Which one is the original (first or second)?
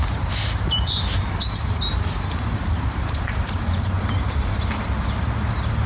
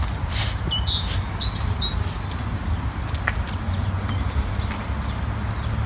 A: second